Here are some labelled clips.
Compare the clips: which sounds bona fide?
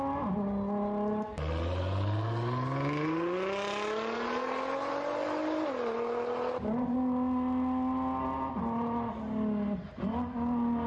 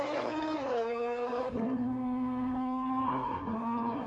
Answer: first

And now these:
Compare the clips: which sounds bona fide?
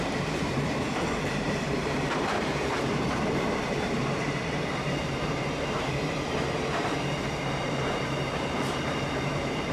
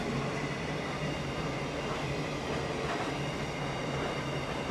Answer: second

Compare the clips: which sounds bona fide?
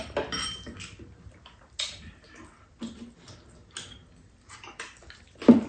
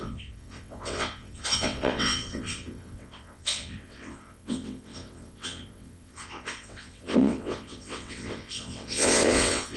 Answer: first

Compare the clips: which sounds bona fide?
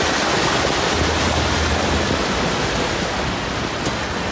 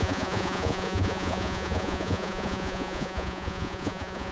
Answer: first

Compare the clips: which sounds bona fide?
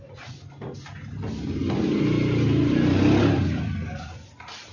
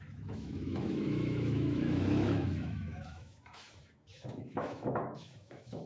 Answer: first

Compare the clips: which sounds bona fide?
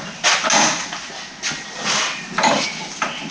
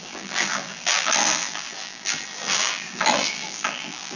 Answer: first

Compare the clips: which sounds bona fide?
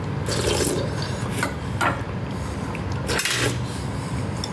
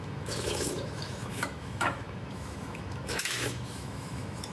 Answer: first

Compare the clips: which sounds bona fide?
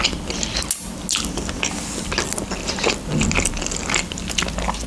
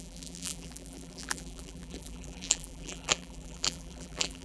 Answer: first